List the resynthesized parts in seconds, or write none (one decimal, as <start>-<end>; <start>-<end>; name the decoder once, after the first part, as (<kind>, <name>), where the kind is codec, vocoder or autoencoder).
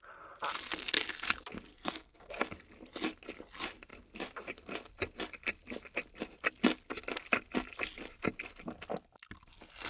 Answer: 1.7-2.3 (codec, SNAC)